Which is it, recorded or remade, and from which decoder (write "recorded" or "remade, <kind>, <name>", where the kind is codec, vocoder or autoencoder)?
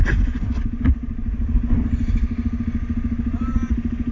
recorded